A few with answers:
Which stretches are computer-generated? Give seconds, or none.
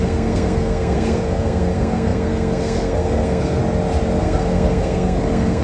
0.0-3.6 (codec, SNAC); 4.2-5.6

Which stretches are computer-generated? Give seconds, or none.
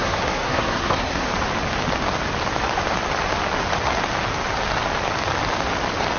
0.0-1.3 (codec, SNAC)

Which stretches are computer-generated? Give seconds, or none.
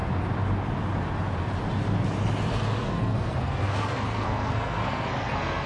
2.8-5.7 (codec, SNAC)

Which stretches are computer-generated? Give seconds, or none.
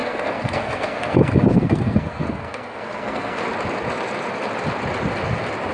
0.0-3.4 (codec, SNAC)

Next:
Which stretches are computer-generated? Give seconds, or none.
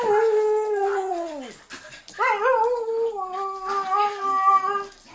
none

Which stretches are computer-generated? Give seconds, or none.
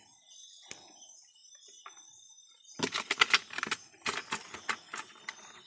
none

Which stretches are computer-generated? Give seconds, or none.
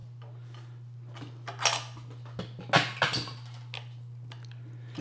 none